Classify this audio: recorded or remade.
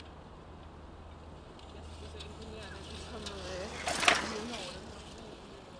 recorded